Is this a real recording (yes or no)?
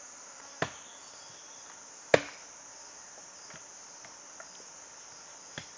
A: yes